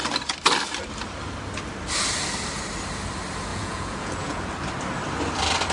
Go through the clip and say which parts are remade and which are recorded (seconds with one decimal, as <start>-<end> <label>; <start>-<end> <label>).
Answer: 0.0-3.5 recorded; 3.5-4.5 remade; 4.5-5.7 recorded